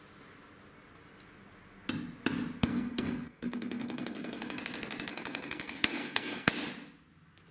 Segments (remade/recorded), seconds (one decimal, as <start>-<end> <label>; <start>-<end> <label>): 0.0-2.6 recorded; 2.6-4.6 remade; 4.6-5.1 recorded; 5.1-6.5 remade; 6.5-7.5 recorded